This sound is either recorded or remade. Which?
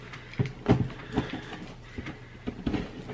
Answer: recorded